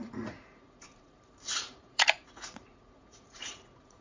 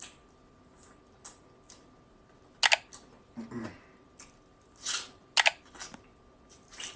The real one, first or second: second